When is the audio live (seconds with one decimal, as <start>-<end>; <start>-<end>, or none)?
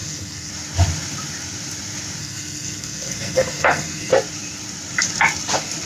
0.5-2.2; 4.1-5.9